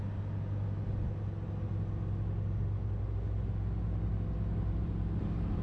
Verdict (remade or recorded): recorded